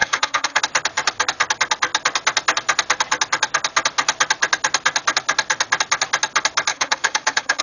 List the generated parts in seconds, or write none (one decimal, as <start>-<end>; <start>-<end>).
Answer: 0.0-0.6; 6.7-7.6

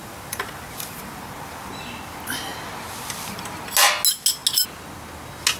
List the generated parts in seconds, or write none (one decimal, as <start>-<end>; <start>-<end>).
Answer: 0.0-1.7

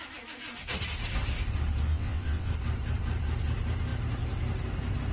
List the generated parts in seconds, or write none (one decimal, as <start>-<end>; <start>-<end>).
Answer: 1.9-2.5

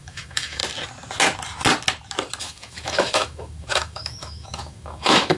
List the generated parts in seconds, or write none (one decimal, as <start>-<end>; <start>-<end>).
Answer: 0.0-0.6; 2.4-5.4